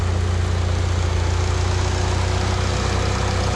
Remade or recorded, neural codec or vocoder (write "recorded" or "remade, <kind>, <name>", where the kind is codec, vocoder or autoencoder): recorded